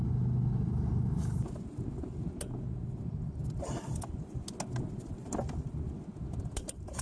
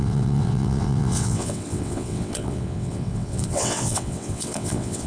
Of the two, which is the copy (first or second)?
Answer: second